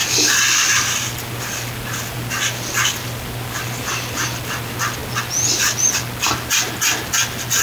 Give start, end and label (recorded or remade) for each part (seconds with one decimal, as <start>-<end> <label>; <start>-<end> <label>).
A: 0.0-5.0 remade; 5.0-7.6 recorded